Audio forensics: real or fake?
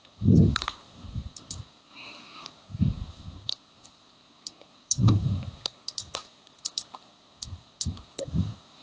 fake